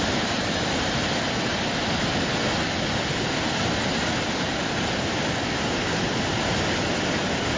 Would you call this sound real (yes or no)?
yes